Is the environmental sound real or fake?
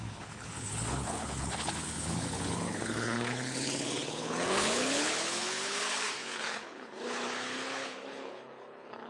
fake